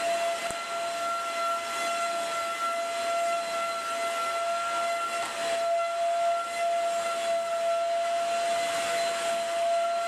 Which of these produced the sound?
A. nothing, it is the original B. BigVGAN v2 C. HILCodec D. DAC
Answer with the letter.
A